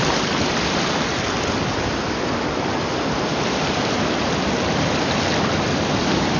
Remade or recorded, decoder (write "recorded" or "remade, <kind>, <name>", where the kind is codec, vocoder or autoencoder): recorded